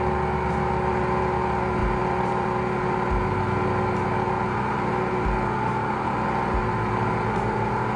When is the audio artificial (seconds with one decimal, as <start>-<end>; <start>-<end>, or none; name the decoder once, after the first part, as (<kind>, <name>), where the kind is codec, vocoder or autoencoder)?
none